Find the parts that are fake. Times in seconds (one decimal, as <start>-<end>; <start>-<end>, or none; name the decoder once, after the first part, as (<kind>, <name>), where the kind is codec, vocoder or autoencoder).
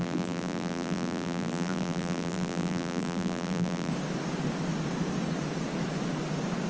0.0-3.9 (vocoder, BigVGAN v2)